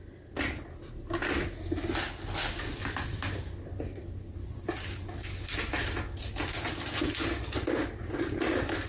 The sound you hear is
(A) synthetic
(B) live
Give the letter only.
B